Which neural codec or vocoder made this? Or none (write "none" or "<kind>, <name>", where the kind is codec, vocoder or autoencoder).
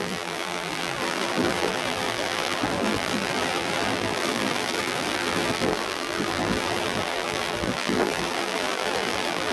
vocoder, BigVGAN v2